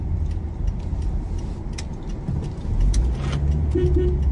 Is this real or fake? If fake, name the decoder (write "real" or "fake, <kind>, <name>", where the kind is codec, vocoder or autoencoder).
real